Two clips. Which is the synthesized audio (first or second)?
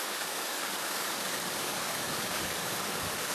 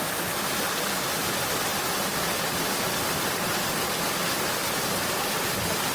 first